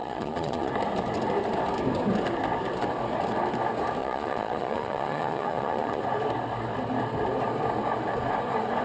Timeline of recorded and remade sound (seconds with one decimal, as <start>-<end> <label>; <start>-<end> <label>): 0.0-0.7 remade; 0.7-4.0 recorded; 4.0-6.0 remade; 6.0-8.8 recorded